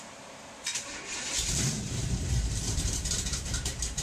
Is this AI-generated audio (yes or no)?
yes